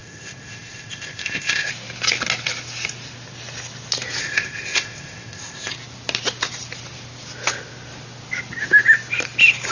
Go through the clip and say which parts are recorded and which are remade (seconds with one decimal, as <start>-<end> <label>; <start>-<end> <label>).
0.0-1.7 remade; 1.7-4.2 recorded; 4.2-5.7 remade; 5.7-9.7 recorded